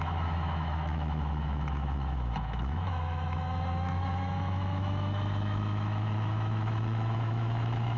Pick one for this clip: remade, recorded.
remade